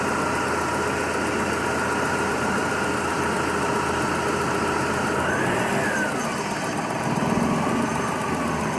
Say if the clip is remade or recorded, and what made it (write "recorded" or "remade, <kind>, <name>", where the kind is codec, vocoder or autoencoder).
recorded